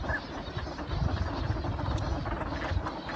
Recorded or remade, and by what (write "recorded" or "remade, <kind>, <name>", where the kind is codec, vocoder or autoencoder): recorded